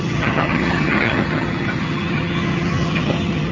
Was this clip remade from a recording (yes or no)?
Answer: yes